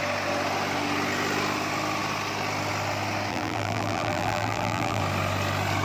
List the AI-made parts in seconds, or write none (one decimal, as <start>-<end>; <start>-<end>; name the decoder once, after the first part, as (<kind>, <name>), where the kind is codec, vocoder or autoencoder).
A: 3.3-5.0 (vocoder, BigVGAN v2)